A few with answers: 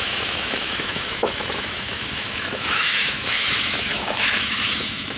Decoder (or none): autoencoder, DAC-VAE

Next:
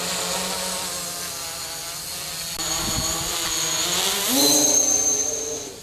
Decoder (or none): none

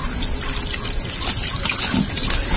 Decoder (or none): none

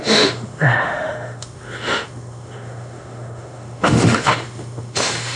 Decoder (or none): autoencoder, DAC-VAE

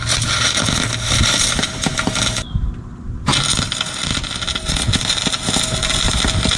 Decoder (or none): none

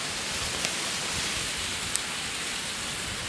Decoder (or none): none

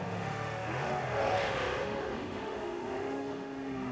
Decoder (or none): autoencoder, DAC-VAE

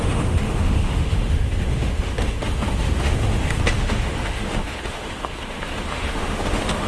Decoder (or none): autoencoder, DAC-VAE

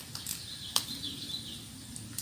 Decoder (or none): none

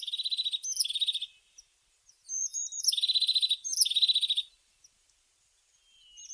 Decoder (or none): none